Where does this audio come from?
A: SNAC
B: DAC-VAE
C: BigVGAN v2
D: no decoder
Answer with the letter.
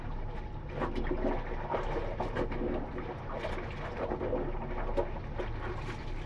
D